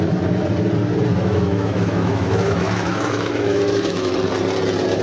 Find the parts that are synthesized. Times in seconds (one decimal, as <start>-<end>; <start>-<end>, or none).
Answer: 1.1-4.1